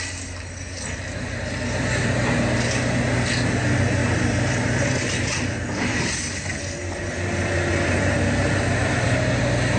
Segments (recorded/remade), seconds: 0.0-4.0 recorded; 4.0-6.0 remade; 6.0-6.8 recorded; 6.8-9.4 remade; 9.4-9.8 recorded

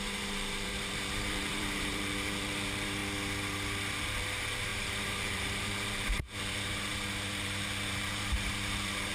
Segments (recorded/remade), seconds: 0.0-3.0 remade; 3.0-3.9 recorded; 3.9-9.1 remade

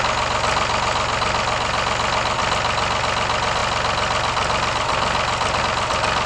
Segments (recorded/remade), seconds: 0.0-6.3 recorded

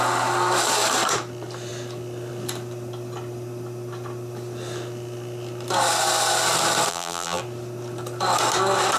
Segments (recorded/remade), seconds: 0.0-6.9 recorded; 6.9-7.4 remade; 7.4-9.0 recorded